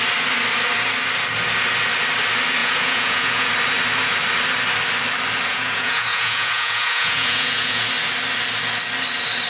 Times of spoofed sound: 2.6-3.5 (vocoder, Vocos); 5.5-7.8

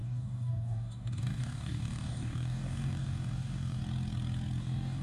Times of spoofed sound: 0.0-3.8 (codec, DAC); 4.6-5.0